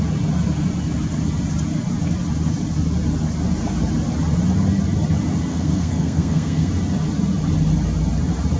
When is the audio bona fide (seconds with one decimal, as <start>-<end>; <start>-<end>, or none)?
0.0-5.5; 6.7-8.6